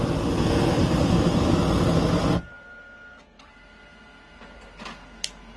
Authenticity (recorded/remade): recorded